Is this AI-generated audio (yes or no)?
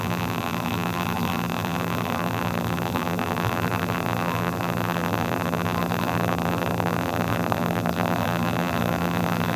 yes